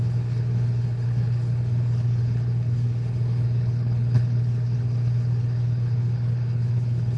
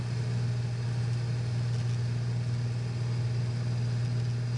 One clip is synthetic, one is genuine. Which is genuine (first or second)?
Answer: second